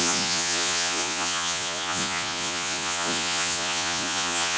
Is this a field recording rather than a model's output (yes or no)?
no